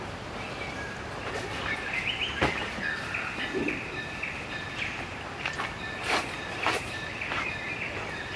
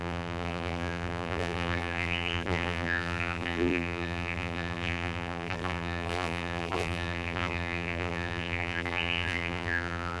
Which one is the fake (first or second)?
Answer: second